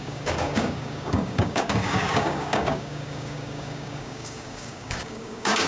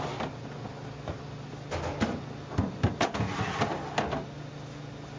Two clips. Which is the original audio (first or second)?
second